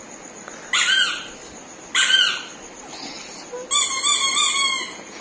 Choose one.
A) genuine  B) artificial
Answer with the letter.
A